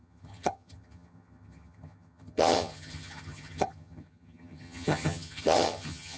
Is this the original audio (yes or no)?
no